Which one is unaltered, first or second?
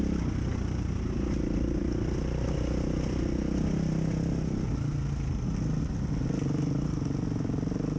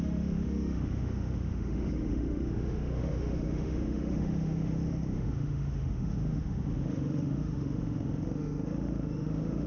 first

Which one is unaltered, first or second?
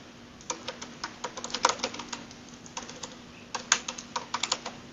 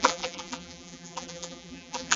first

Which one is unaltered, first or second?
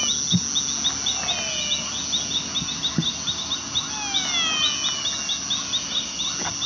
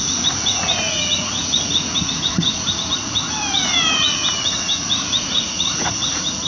first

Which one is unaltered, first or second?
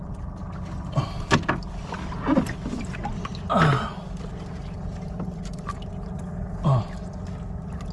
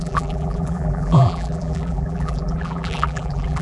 first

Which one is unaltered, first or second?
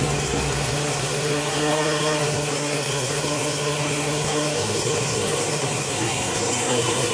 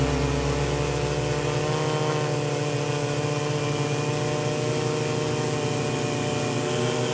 second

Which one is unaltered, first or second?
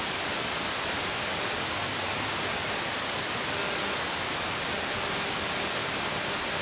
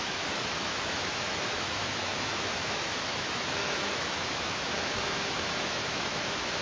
first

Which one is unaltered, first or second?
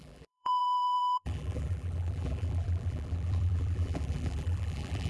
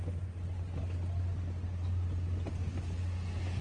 second